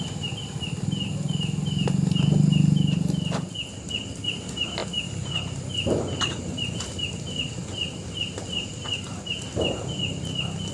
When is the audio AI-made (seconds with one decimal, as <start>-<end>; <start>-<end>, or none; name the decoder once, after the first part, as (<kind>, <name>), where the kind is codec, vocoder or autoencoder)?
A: none